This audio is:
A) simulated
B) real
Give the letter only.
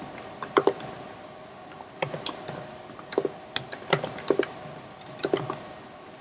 B